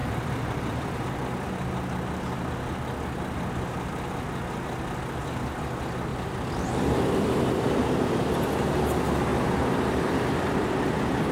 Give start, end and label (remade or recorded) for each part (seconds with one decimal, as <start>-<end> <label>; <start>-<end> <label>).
0.0-1.5 remade; 1.5-6.1 recorded; 6.1-8.1 remade; 8.1-11.3 recorded